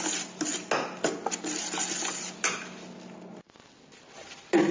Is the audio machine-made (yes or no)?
no